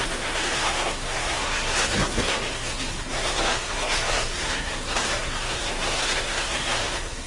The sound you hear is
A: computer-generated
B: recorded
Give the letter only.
A